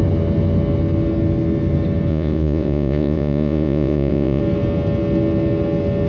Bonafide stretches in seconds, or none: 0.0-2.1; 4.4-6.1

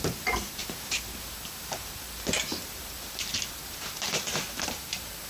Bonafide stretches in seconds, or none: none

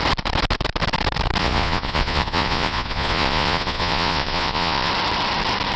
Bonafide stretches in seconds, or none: 0.0-1.4; 4.9-5.8

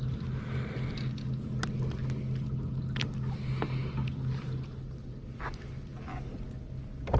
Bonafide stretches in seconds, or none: 0.0-7.2

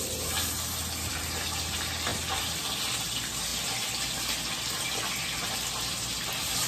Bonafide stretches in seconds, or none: 0.0-6.7

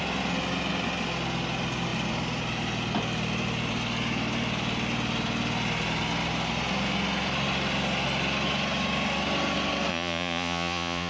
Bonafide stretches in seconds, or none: 0.0-9.9